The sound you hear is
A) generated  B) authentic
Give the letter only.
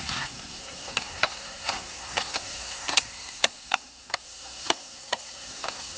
A